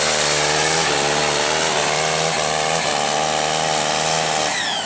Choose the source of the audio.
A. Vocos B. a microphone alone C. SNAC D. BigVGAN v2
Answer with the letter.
B